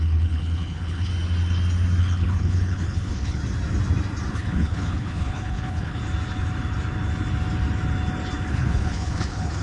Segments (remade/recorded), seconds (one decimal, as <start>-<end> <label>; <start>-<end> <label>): 0.0-1.1 remade; 1.1-2.0 recorded; 2.0-3.4 remade; 3.4-4.3 recorded; 4.3-6.0 remade; 6.0-8.5 recorded; 8.5-9.6 remade